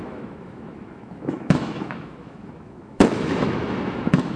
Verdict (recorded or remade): remade